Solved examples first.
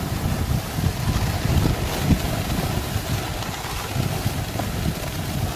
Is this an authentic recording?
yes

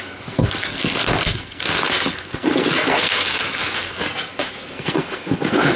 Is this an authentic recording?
no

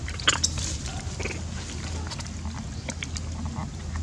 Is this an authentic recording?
yes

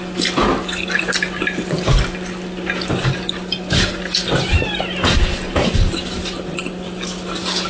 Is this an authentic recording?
yes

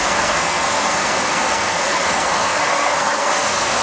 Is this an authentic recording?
no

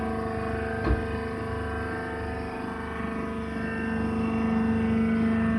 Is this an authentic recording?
yes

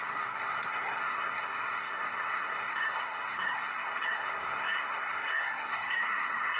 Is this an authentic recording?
no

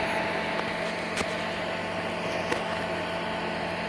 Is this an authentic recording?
yes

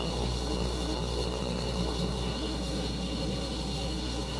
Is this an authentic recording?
no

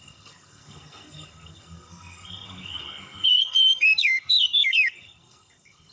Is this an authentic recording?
no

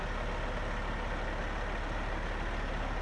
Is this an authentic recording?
yes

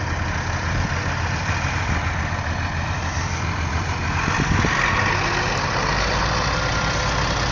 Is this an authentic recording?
yes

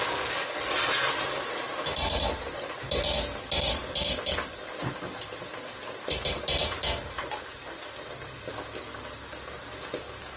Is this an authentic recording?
yes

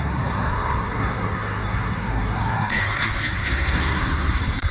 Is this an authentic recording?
no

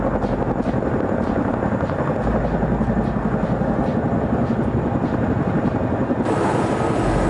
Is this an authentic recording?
yes